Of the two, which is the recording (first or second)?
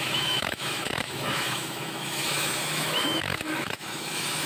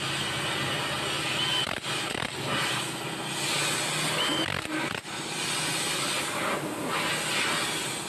second